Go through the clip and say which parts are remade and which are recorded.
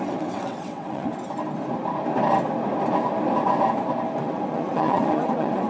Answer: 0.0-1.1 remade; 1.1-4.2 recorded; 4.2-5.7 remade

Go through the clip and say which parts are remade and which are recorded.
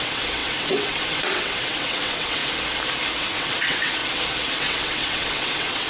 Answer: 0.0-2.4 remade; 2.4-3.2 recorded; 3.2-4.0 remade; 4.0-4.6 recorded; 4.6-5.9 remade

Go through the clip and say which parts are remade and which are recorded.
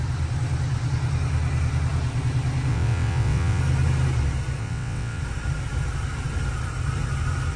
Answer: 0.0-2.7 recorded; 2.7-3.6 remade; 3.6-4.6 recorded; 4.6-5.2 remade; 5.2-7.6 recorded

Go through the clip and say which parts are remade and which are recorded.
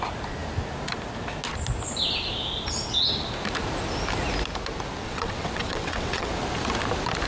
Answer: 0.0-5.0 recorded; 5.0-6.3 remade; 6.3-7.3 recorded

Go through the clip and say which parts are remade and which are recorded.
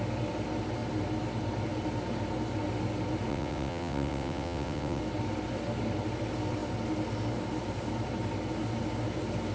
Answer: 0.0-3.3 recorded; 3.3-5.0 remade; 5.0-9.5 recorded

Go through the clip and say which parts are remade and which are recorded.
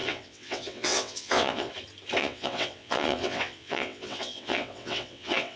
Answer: 0.0-1.7 remade; 1.7-2.2 recorded; 2.2-5.6 remade